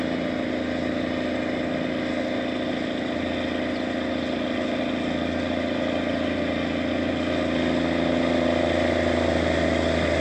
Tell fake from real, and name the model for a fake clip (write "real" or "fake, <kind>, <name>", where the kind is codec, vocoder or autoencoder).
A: real